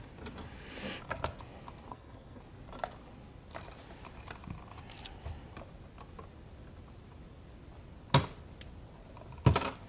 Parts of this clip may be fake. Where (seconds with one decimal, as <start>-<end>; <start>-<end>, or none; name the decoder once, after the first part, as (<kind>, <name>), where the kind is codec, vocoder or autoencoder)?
1.9-2.4 (codec, SNAC)